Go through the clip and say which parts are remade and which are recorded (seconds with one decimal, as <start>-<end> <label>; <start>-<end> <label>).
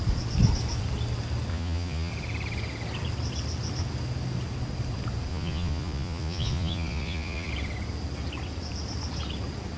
0.0-1.5 recorded; 1.5-2.1 remade; 2.1-5.3 recorded; 5.3-7.5 remade; 7.5-9.8 recorded